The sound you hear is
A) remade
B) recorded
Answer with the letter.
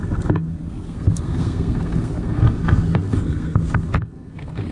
A